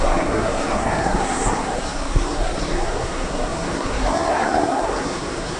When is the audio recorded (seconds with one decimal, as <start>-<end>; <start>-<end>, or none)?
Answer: none